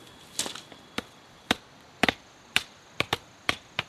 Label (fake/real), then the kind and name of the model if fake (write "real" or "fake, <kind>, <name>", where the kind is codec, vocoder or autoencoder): fake, vocoder, BigVGAN v2